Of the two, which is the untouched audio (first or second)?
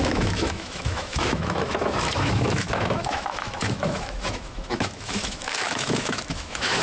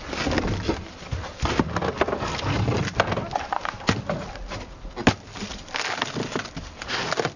second